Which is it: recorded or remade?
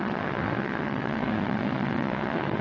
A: remade